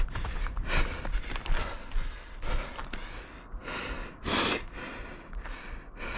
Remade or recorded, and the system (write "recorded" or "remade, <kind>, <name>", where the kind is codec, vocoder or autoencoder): recorded